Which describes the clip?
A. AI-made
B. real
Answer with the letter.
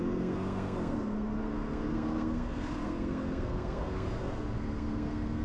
A